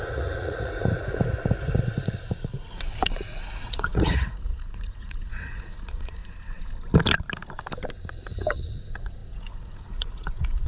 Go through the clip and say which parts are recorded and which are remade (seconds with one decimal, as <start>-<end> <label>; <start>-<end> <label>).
0.0-6.2 remade; 6.2-8.1 recorded; 8.1-10.7 remade